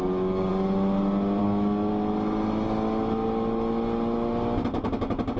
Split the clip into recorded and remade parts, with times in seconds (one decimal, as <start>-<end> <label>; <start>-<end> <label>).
0.0-0.5 remade; 0.5-1.4 recorded; 1.4-1.9 remade; 1.9-5.4 recorded